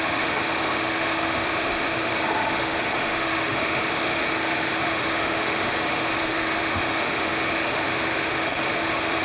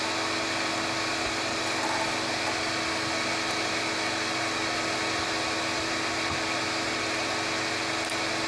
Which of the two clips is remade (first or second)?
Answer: first